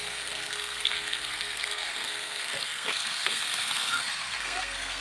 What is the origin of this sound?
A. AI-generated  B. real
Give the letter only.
A